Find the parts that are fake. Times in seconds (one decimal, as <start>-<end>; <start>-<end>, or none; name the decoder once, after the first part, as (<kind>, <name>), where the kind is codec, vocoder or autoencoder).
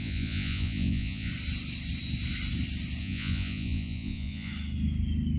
0.0-1.3 (vocoder, Vocos); 3.0-4.5